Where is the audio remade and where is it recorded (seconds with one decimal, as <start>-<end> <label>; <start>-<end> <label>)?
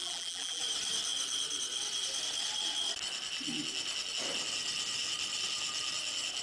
0.0-0.6 remade; 0.6-6.4 recorded